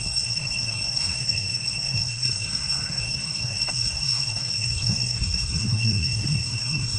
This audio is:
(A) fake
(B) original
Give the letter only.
A